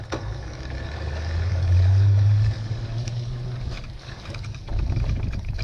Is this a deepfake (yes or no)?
yes